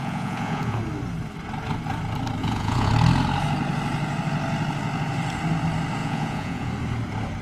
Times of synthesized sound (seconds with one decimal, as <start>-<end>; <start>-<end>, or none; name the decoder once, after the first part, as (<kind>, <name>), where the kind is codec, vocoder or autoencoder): 0.0-0.8 (vocoder, Vocos); 2.4-2.9; 6.0-6.7